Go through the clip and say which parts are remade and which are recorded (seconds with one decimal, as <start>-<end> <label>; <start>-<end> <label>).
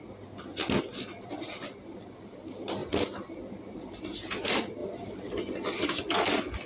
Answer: 0.0-1.4 recorded; 1.4-2.0 remade; 2.0-6.7 recorded